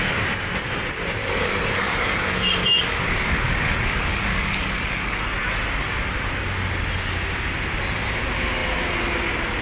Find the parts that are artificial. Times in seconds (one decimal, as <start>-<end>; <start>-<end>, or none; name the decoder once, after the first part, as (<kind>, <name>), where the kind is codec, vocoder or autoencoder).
1.2-5.2 (codec, DAC)